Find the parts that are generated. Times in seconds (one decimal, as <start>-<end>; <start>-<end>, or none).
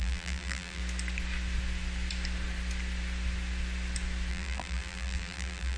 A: 0.0-0.8; 4.3-5.8